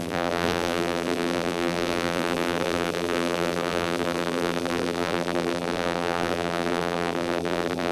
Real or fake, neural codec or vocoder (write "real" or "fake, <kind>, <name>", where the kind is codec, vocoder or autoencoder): fake, vocoder, BigVGAN v2